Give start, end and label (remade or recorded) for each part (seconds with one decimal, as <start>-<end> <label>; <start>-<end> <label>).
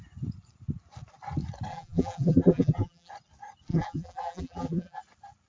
0.0-1.7 recorded; 1.7-3.1 remade; 3.1-3.7 recorded; 3.7-5.0 remade; 5.0-5.5 recorded